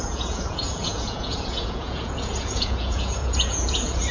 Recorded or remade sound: remade